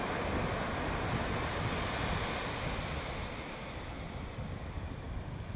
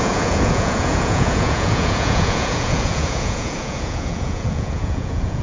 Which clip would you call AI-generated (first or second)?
second